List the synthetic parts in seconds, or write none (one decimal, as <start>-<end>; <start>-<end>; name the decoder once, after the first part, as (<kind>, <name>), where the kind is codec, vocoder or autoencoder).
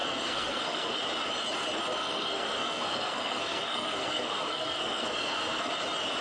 0.0-1.0 (codec, SNAC); 2.0-5.7